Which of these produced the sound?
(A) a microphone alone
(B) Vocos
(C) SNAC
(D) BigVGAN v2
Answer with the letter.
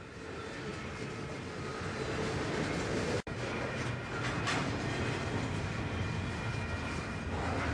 A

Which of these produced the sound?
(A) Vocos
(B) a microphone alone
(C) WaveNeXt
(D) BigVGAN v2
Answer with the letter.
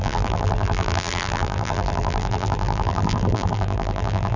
D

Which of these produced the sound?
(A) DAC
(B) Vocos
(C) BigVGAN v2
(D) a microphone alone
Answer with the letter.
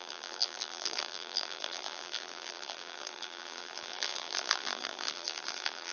C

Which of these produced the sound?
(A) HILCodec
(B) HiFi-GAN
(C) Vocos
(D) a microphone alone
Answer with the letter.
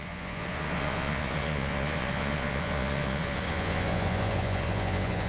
C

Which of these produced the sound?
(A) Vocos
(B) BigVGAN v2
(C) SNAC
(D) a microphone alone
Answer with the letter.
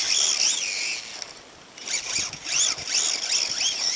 D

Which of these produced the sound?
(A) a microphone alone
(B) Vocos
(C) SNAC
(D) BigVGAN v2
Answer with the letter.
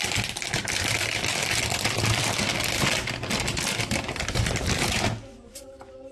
A